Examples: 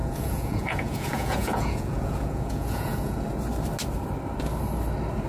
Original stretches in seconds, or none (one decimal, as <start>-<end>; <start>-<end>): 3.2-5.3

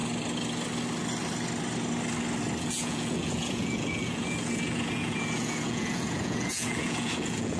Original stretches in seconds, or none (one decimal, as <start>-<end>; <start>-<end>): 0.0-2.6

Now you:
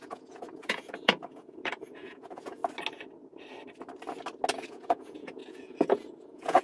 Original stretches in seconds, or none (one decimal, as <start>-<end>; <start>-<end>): 2.6-4.5

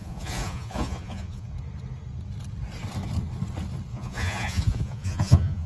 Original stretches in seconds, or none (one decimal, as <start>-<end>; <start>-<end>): 1.5-3.9